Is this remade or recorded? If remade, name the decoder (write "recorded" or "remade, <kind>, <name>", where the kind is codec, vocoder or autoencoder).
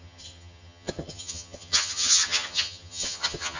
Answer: remade, vocoder, HiFi-GAN